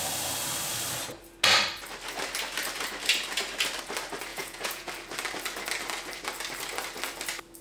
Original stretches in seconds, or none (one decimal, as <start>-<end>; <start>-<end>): 0.0-4.3; 4.9-7.6